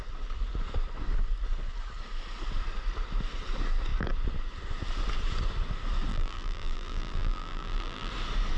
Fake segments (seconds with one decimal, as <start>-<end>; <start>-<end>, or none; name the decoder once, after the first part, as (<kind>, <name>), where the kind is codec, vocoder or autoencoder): 6.1-8.1 (vocoder, BigVGAN v2)